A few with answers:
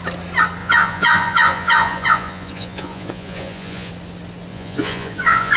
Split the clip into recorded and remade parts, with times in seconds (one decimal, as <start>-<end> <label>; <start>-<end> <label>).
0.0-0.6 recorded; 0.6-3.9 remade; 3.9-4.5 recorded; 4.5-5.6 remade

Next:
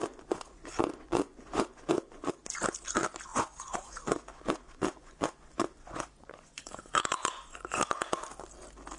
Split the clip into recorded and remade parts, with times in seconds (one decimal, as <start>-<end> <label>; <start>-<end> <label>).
0.0-2.3 remade; 2.3-3.3 recorded; 3.3-7.8 remade; 7.8-9.0 recorded

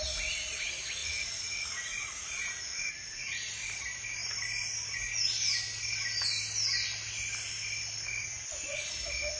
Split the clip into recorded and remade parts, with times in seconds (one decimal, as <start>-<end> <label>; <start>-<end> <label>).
0.0-1.0 recorded; 1.0-3.5 remade; 3.5-8.2 recorded; 8.2-8.9 remade; 8.9-9.4 recorded

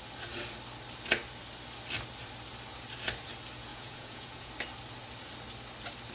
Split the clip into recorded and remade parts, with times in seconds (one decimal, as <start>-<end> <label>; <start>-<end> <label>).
0.0-3.7 recorded; 3.7-4.5 remade; 4.5-6.1 recorded

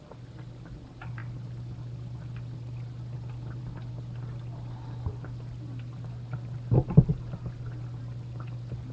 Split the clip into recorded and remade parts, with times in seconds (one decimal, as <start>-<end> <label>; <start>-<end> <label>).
0.0-8.9 recorded